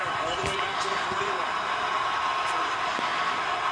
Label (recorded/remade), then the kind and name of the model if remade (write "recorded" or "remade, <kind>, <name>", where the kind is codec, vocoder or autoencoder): recorded